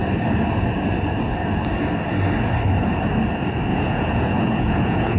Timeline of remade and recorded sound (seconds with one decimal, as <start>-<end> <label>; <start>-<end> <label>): 0.0-3.7 recorded; 3.7-5.2 remade

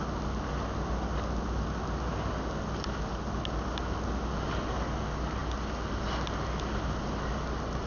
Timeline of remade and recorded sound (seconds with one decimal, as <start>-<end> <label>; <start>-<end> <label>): 0.0-7.9 recorded

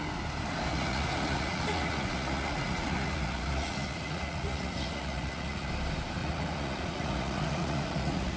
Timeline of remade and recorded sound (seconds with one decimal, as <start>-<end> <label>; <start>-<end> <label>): 0.0-0.7 recorded; 0.7-5.7 remade; 5.7-6.2 recorded; 6.2-8.4 remade

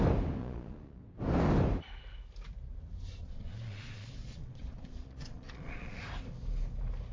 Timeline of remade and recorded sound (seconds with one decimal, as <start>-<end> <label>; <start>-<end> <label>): 0.0-0.4 recorded; 0.4-1.0 remade; 1.0-3.2 recorded; 3.2-6.0 remade; 6.0-7.1 recorded

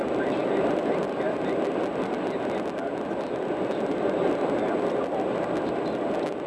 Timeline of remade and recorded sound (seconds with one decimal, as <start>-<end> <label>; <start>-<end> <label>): 0.0-6.5 recorded

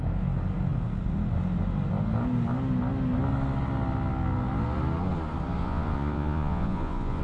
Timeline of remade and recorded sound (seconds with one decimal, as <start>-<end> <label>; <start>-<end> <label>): 0.0-5.6 recorded; 5.6-7.2 remade